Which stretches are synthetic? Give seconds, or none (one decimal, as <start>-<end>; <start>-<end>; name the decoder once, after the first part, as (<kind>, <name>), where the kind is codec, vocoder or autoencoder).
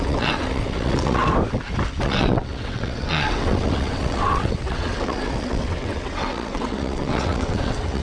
0.0-1.2 (vocoder, WaveNeXt); 2.0-8.0